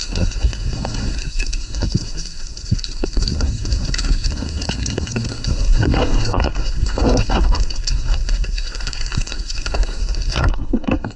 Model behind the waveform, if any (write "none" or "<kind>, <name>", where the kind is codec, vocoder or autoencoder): codec, SNAC